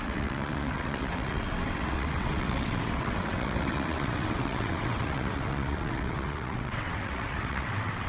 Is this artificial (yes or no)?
yes